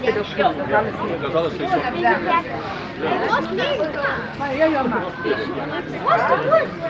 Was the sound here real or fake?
real